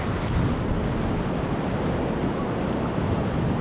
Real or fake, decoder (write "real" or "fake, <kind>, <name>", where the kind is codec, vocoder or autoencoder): real